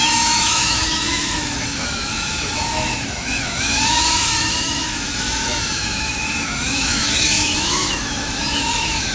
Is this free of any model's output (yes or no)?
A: no